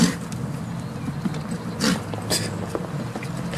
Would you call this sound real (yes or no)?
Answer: yes